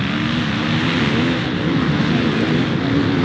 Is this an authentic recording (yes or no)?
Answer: yes